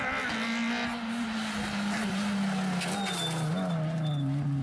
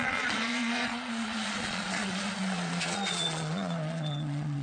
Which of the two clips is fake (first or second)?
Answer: second